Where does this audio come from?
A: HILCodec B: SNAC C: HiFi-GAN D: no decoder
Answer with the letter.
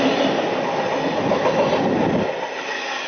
D